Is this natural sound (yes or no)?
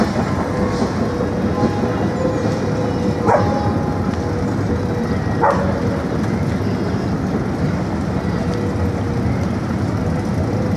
yes